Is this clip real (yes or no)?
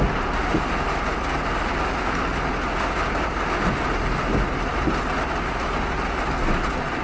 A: yes